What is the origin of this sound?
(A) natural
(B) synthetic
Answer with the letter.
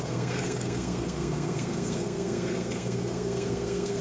B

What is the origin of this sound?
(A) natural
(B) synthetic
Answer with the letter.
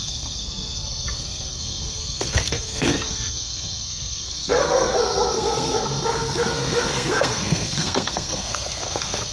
B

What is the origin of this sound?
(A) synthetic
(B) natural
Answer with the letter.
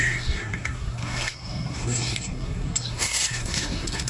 A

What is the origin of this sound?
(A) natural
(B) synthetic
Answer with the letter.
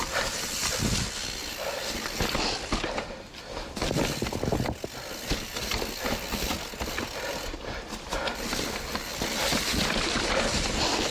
A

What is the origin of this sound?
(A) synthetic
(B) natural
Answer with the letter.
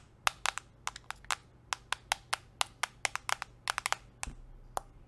B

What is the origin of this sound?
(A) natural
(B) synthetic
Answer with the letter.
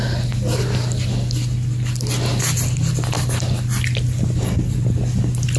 A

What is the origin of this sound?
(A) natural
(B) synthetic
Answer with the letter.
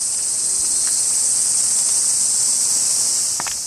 A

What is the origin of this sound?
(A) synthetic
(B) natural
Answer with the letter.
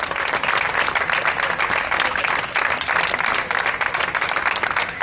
B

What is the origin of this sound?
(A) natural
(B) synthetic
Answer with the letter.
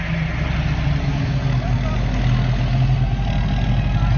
A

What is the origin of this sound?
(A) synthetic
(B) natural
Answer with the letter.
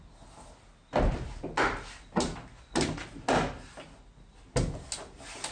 B